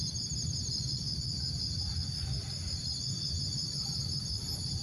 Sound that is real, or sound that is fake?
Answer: real